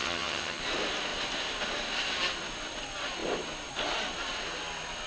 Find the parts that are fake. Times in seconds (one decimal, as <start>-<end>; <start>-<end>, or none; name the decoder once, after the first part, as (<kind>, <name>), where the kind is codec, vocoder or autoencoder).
0.0-0.6 (vocoder, HiFi-GAN)